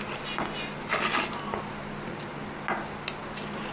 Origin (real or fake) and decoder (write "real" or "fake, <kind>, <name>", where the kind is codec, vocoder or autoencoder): real